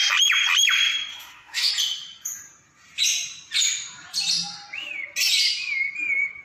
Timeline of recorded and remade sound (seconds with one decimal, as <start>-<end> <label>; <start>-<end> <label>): 0.0-1.1 recorded; 1.1-1.7 remade; 1.7-6.4 recorded